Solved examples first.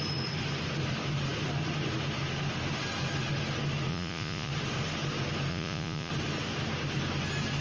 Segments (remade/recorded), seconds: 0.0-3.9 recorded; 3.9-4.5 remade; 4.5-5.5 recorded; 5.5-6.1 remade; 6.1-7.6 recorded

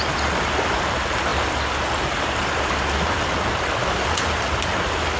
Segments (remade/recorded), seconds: 0.0-5.2 recorded

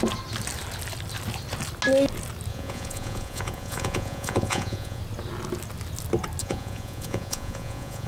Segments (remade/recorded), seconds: 0.0-2.5 recorded; 2.5-5.0 remade; 5.0-6.4 recorded; 6.4-8.1 remade

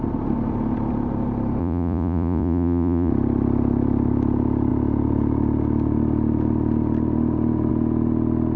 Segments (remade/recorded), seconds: 0.0-1.6 recorded; 1.6-3.1 remade; 3.1-8.6 recorded